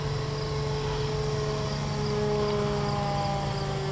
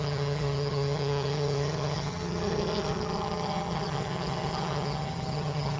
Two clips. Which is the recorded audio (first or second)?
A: first